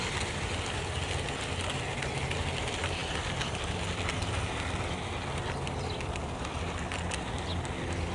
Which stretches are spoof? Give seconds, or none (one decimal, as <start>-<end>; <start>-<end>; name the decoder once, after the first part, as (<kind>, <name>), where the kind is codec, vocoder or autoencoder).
none